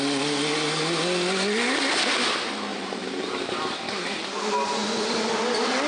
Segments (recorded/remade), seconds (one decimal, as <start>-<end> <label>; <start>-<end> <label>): 0.0-2.7 recorded; 2.7-4.2 remade; 4.2-5.9 recorded